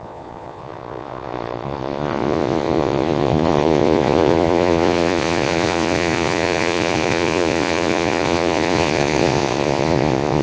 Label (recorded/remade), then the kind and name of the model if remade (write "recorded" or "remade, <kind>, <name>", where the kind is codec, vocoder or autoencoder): remade, vocoder, Vocos